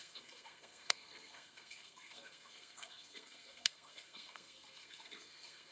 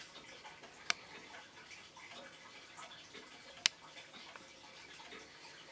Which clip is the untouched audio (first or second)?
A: second